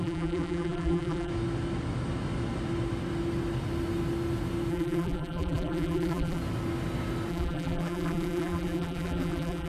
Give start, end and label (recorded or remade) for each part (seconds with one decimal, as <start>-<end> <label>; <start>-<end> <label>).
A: 0.0-1.3 remade; 1.3-4.7 recorded; 4.7-6.4 remade; 6.4-7.3 recorded; 7.3-9.7 remade